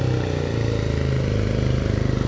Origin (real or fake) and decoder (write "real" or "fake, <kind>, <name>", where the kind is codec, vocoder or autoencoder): real